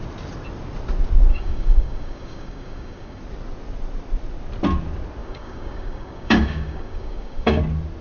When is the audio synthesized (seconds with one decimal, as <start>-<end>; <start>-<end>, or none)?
1.3-3.2; 5.2-7.6